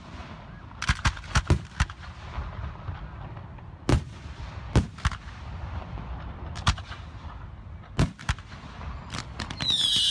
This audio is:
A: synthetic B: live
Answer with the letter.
B